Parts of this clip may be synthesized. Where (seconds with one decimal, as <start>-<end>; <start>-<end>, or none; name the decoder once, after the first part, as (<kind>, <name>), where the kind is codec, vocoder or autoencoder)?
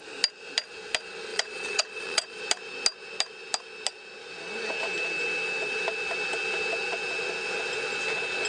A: 1.3-2.4 (vocoder, Vocos)